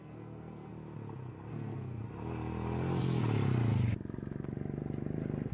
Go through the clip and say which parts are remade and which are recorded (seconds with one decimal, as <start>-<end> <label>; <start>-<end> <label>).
0.0-0.7 remade; 0.7-1.5 recorded; 1.5-2.0 remade; 2.0-5.5 recorded